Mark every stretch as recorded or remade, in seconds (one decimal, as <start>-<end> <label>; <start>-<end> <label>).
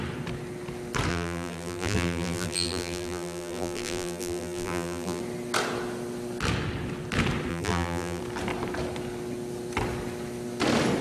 0.0-1.1 recorded; 1.1-5.2 remade; 5.2-7.5 recorded; 7.5-8.2 remade; 8.2-11.0 recorded